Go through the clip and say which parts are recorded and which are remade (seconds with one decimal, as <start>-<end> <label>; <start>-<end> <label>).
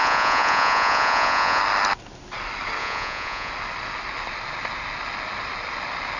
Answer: 0.0-1.6 remade; 1.6-2.8 recorded; 2.8-3.5 remade; 3.5-6.2 recorded